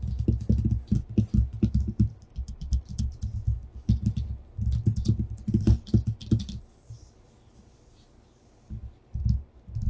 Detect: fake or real real